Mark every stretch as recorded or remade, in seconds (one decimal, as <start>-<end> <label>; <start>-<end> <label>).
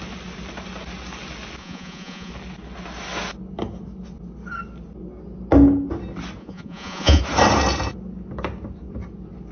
0.0-1.6 recorded; 1.6-2.3 remade; 2.3-6.4 recorded; 6.4-7.2 remade; 7.2-9.5 recorded